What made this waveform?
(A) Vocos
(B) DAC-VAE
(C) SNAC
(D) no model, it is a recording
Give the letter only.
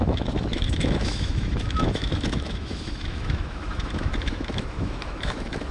B